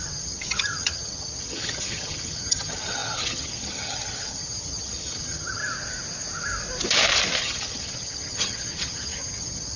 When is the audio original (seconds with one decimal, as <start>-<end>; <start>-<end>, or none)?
5.6-7.4